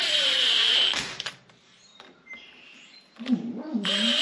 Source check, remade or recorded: remade